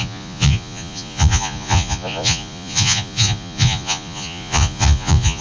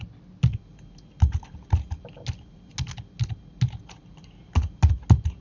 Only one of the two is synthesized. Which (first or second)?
first